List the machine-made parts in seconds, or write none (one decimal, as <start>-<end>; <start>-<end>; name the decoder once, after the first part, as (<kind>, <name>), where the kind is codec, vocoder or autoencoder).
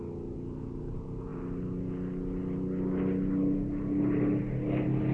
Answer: none